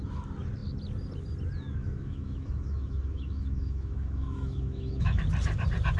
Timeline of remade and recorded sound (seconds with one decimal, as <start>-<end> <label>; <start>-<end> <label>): 0.0-1.8 recorded; 1.8-5.2 remade; 5.2-6.0 recorded

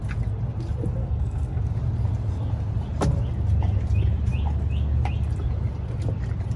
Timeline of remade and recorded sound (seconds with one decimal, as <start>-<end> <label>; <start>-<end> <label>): 0.0-1.0 recorded; 1.0-1.6 remade; 1.6-6.6 recorded

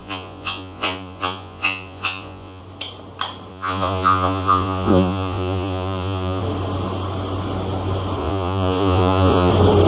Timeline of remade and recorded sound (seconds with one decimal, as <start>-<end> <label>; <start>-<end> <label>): 0.0-2.6 remade; 2.6-3.5 recorded; 3.5-6.4 remade; 6.4-8.2 recorded; 8.2-9.5 remade; 9.5-9.9 recorded

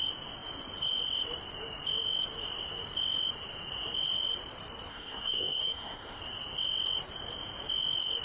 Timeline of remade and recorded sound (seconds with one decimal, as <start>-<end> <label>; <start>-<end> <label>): 0.0-4.9 recorded; 4.9-6.2 remade; 6.2-8.2 recorded

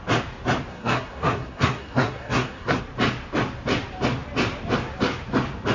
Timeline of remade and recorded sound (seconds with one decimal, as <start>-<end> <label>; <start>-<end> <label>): 0.0-0.7 recorded; 0.7-2.8 remade; 2.8-5.7 recorded

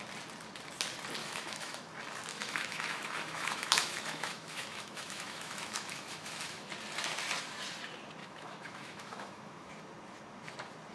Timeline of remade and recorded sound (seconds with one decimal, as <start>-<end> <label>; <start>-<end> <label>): 0.0-1.2 recorded; 1.2-1.9 remade; 1.9-2.3 recorded; 2.3-6.7 remade; 6.7-8.2 recorded; 8.2-9.7 remade; 9.7-10.9 recorded